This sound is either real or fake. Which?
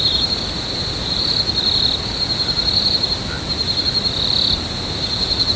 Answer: real